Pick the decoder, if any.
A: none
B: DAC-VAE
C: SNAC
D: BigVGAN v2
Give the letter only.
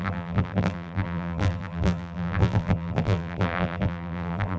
D